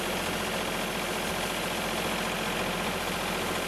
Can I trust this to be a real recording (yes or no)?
yes